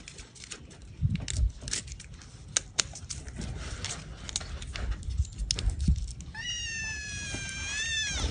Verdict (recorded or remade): recorded